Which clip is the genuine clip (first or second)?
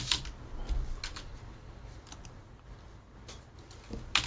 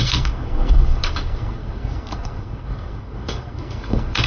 first